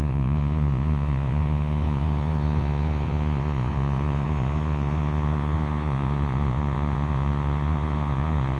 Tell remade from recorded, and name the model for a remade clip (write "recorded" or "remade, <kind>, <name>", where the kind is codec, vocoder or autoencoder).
remade, vocoder, Vocos